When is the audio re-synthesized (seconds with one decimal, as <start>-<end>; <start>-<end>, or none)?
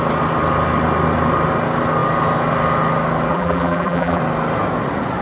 3.3-4.2